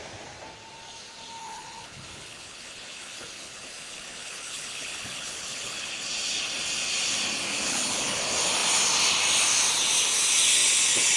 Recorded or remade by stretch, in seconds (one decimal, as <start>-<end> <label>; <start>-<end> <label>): 0.0-1.4 recorded; 1.4-5.9 remade; 5.9-7.5 recorded; 7.5-8.2 remade; 8.2-11.2 recorded